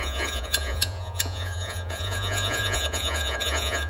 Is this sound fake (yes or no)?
yes